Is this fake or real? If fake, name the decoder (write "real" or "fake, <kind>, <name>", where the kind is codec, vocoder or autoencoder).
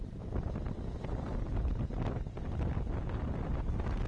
real